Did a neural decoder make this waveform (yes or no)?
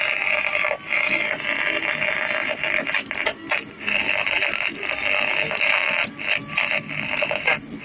no